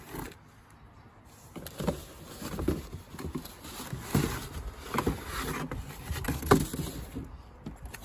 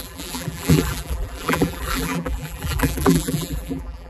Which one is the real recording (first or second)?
first